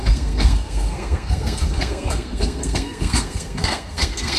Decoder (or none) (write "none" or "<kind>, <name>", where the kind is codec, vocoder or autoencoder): codec, SNAC